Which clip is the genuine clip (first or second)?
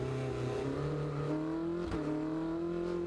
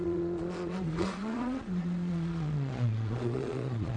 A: first